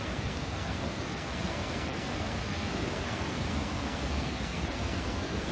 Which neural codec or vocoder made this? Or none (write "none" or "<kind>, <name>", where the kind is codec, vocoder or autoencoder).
codec, SNAC